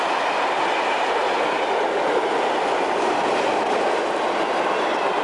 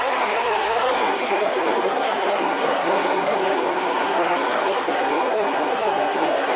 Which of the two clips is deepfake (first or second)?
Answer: second